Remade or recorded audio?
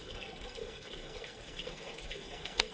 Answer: remade